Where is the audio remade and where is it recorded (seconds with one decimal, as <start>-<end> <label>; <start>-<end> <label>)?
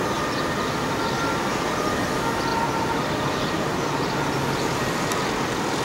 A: 0.0-2.5 recorded; 2.5-5.1 remade; 5.1-5.8 recorded